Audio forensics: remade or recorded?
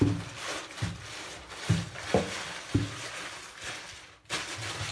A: recorded